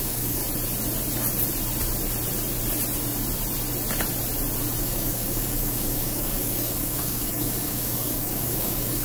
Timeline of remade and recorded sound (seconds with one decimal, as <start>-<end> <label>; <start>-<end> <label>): 0.0-0.4 remade; 0.4-4.8 recorded; 4.8-9.0 remade